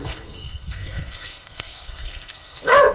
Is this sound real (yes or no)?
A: no